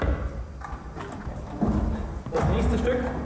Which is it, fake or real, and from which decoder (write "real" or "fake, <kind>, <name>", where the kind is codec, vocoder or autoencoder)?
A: real